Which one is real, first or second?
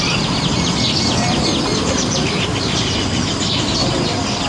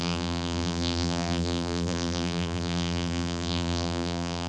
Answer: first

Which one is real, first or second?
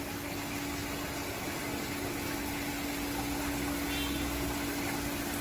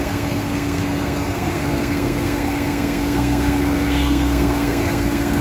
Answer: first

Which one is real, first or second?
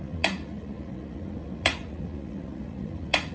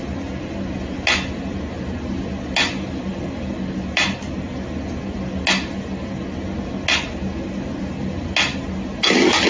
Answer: second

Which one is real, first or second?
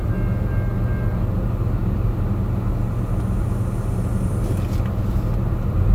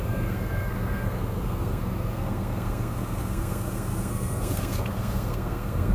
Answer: first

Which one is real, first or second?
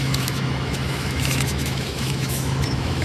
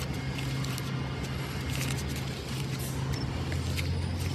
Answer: second